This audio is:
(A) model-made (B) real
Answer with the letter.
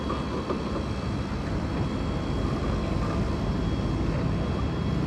B